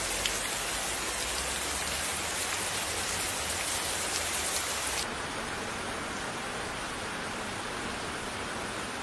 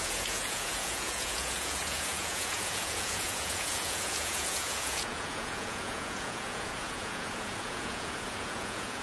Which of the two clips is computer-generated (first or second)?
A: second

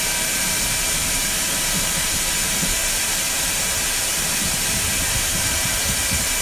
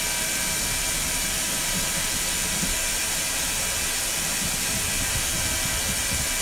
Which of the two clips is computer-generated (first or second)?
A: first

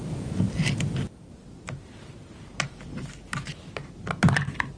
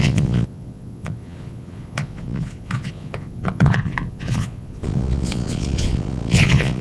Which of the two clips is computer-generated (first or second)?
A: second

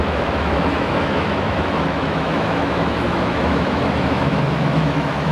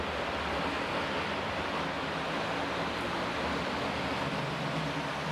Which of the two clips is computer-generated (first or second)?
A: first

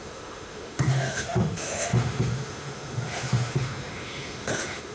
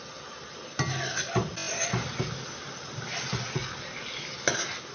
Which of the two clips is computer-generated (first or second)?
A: first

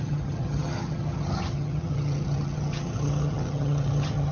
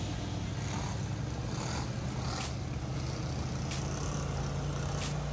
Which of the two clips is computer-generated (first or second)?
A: first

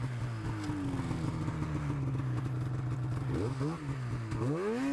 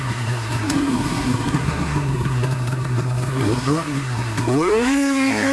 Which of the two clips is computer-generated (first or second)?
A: second